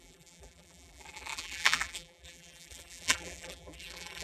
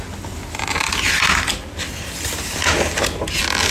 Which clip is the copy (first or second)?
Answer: first